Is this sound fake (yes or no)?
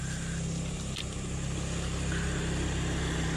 no